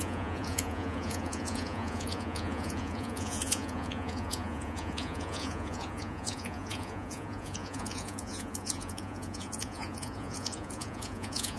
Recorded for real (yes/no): no